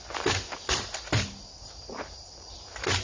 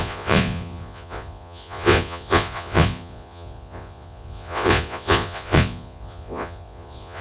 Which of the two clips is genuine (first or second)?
first